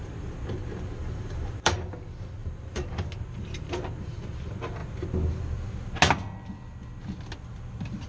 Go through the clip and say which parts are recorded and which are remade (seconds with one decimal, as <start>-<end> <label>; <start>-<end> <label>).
0.0-1.0 recorded; 1.0-1.8 remade; 1.8-2.4 recorded; 2.4-2.9 remade; 2.9-8.1 recorded